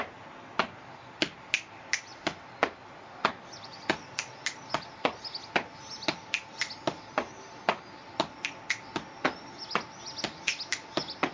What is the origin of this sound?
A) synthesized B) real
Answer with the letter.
B